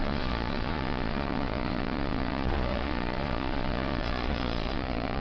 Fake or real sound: fake